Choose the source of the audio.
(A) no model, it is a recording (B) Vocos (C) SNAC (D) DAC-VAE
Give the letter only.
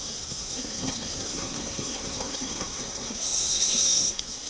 C